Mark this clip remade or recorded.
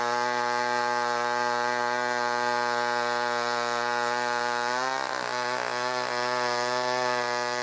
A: recorded